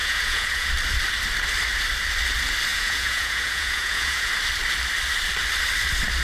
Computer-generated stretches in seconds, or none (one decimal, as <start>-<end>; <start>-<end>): 0.0-0.7; 2.7-4.3